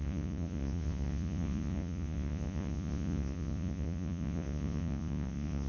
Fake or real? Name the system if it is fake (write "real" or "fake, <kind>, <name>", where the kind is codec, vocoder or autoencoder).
fake, vocoder, Vocos